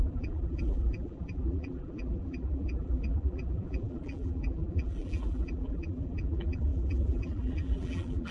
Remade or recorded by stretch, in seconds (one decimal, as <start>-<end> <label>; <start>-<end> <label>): 0.0-8.3 remade